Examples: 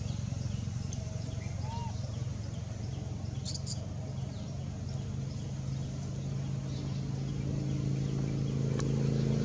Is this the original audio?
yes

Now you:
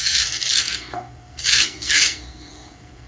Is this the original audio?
no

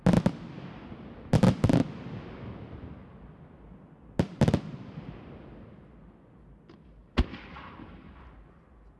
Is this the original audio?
yes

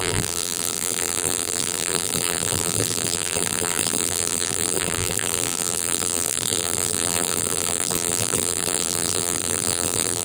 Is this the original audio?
no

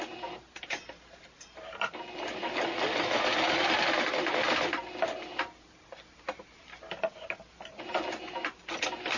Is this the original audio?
yes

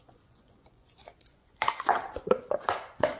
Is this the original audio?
no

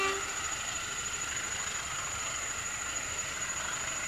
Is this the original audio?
yes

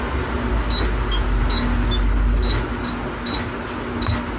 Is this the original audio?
yes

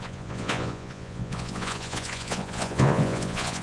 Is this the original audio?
no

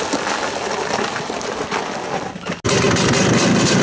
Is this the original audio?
yes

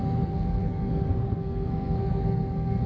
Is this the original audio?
no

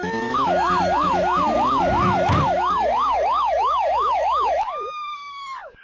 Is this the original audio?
no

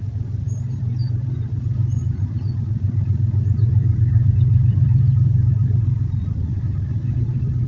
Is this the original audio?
no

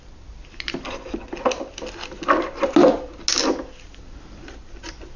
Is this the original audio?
yes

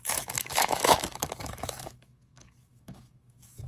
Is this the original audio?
no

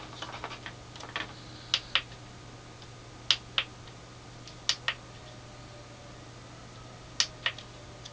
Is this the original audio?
yes